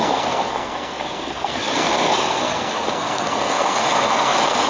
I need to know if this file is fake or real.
fake